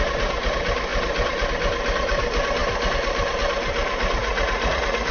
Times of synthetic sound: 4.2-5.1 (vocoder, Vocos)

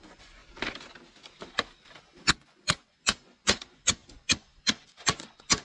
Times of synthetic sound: 0.0-0.4 (vocoder, Vocos); 2.2-5.6

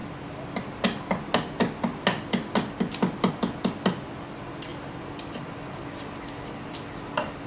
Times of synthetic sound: none